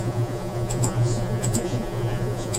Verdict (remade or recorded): remade